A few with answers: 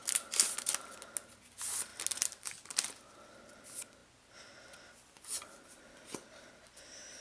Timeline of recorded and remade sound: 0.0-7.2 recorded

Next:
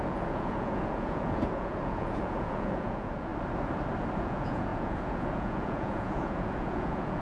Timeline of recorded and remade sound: 0.0-3.3 remade; 3.3-4.2 recorded; 4.2-7.2 remade

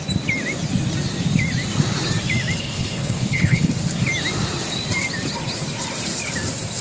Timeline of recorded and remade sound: 0.0-2.6 recorded; 2.6-3.7 remade; 3.7-6.8 recorded

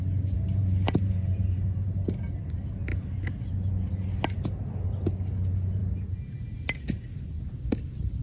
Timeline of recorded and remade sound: 0.0-0.6 recorded; 0.6-2.4 remade; 2.4-8.2 recorded

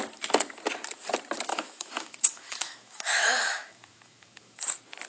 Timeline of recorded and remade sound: 0.0-1.5 recorded; 1.5-4.6 remade; 4.6-5.1 recorded

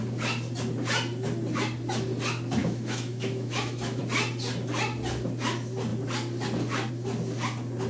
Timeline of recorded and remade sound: 0.0-2.6 recorded; 2.6-4.0 remade; 4.0-7.9 recorded

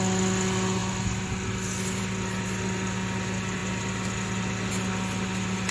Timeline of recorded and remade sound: 0.0-5.7 recorded

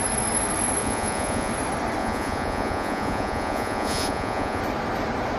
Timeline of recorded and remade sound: 0.0-0.8 recorded; 0.8-1.5 remade; 1.5-2.0 recorded; 2.0-4.6 remade; 4.6-5.4 recorded